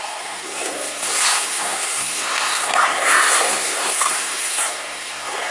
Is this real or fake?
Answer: fake